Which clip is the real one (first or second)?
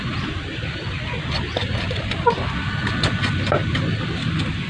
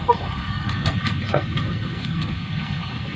first